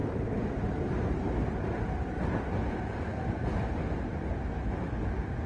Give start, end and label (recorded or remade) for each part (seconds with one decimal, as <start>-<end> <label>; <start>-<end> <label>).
0.0-3.3 remade; 3.3-4.5 recorded; 4.5-5.1 remade; 5.1-5.5 recorded